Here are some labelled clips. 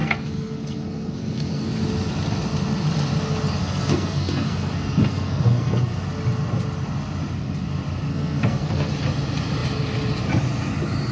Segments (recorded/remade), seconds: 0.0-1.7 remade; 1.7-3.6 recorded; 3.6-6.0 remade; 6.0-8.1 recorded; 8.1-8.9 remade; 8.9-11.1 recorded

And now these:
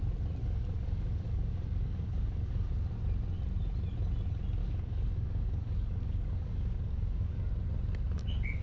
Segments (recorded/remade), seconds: 0.0-0.4 recorded; 0.4-2.7 remade; 2.7-4.6 recorded; 4.6-7.5 remade; 7.5-8.6 recorded

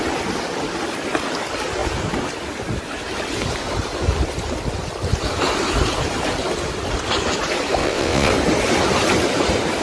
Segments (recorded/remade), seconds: 0.0-7.8 recorded; 7.8-8.3 remade; 8.3-9.8 recorded